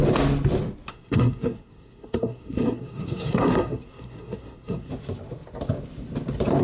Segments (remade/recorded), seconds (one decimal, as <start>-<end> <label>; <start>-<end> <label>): 0.0-0.9 recorded; 0.9-4.9 remade; 4.9-6.6 recorded